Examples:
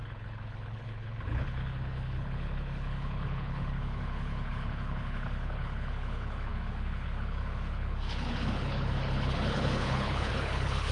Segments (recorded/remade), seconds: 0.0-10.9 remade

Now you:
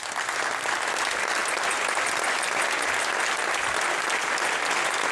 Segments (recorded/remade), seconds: 0.0-5.1 recorded